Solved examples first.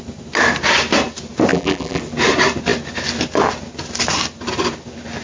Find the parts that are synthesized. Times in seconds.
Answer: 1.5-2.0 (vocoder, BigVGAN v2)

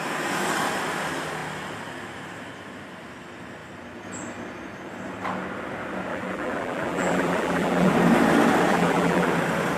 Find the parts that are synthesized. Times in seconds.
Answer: 6.1-7.9 (vocoder, BigVGAN v2); 8.7-9.3

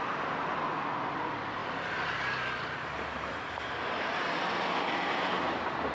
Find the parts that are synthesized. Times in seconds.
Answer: 1.6-4.4 (vocoder, BigVGAN v2)